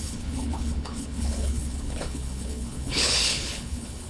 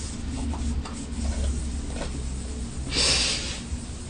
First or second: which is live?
second